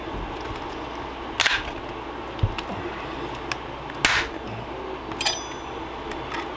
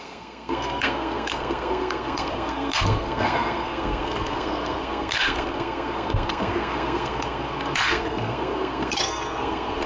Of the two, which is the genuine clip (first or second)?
first